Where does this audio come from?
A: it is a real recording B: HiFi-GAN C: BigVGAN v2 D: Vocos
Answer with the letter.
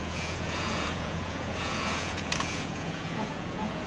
D